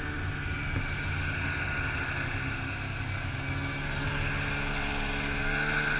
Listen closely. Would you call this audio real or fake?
real